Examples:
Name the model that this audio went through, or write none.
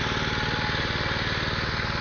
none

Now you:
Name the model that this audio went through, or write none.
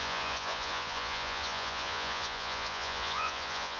vocoder, Vocos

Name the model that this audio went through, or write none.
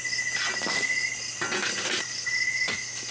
none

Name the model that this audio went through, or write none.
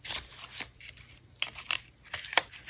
none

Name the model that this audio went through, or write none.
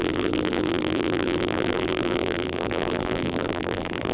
vocoder, BigVGAN v2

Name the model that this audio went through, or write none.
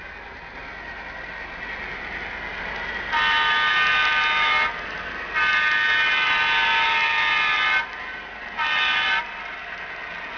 none